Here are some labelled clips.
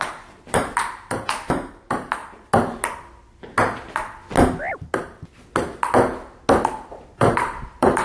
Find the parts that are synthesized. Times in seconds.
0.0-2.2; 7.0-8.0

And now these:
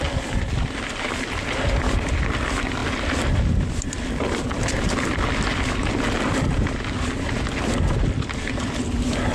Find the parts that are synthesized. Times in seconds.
2.8-5.7

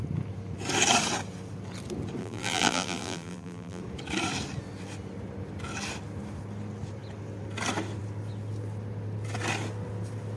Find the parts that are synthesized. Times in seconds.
2.2-3.8

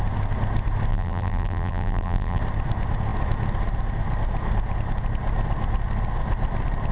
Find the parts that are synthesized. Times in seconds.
0.9-2.4

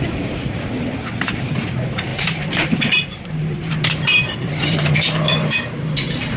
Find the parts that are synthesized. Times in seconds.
0.0-6.4

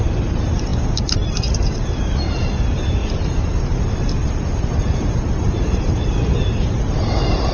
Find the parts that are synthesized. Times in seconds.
0.0-3.0; 3.6-7.5

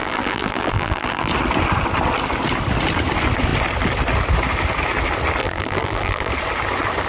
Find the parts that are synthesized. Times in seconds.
0.0-1.3; 5.4-6.3

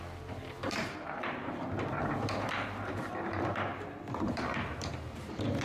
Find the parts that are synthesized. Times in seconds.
0.0-3.7; 4.2-5.6